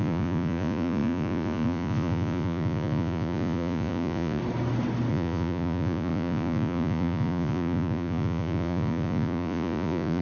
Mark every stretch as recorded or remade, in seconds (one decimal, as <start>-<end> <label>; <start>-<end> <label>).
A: 0.0-4.4 remade; 4.4-5.1 recorded; 5.1-10.2 remade